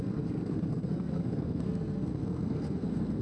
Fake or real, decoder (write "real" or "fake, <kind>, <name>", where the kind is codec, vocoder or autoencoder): fake, codec, SNAC